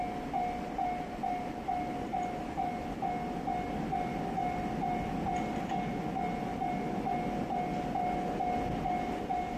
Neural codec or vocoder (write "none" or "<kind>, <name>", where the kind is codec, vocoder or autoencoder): none